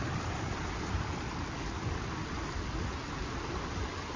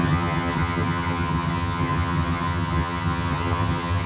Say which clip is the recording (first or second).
first